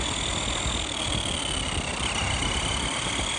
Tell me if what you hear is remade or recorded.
recorded